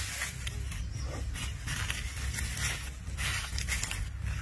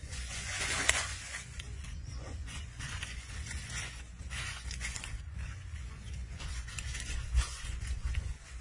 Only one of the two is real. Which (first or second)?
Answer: first